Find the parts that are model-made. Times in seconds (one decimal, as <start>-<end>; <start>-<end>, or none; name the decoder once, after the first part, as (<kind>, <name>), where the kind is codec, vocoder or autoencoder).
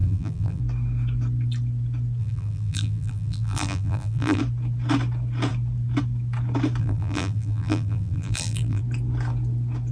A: 0.0-0.6 (vocoder, BigVGAN v2); 2.2-4.4; 6.8-8.8